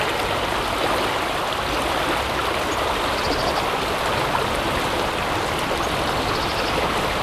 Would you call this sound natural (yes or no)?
yes